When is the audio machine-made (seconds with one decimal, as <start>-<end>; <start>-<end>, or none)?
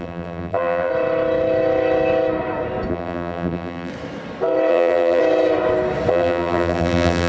0.0-0.9; 2.9-3.9; 4.7-5.2; 6.1-7.3